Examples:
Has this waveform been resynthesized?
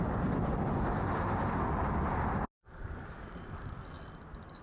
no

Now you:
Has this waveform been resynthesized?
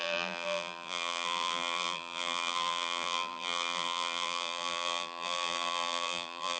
yes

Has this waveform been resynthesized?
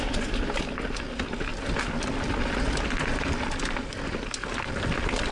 no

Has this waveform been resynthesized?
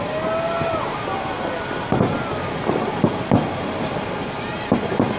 no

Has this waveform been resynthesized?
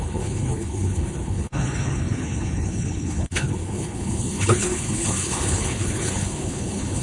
yes